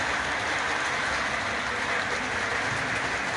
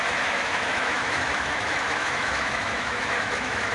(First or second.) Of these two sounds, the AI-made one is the second